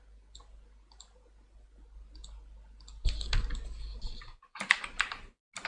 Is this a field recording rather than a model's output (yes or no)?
yes